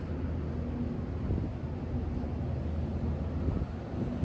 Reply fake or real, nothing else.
real